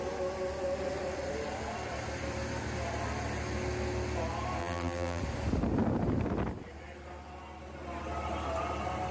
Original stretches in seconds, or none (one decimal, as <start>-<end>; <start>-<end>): 0.0-4.6; 5.2-9.1